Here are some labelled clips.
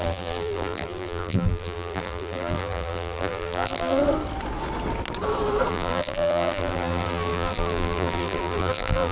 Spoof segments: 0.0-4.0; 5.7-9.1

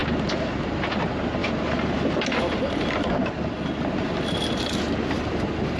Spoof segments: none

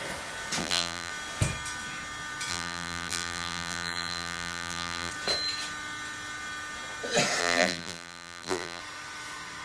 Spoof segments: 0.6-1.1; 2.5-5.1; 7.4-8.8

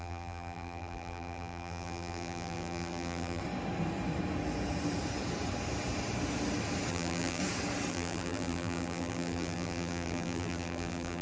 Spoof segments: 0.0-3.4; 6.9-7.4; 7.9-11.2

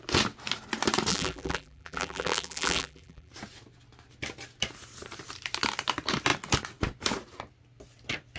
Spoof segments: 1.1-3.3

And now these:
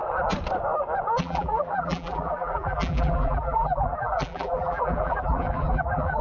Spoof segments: 1.2-6.2

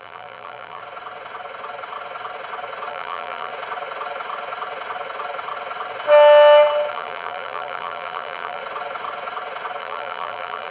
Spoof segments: 0.0-0.8; 2.9-3.5; 6.9-8.6; 9.8-10.7

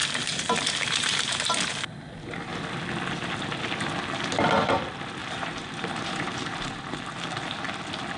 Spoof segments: 0.0-1.5; 5.2-6.8